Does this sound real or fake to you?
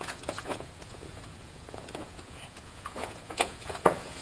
fake